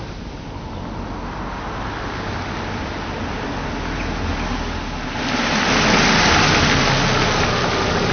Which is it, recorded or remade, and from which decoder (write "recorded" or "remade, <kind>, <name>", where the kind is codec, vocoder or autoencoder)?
recorded